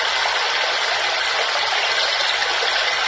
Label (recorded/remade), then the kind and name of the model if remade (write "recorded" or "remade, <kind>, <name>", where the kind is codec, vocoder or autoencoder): recorded